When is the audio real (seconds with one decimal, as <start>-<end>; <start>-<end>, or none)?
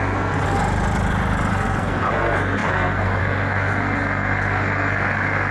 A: 0.6-1.5